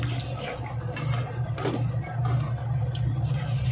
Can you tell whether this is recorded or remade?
recorded